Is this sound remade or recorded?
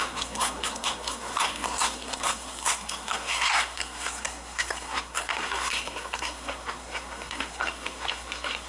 remade